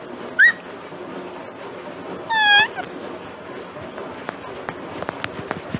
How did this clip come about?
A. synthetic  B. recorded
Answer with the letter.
B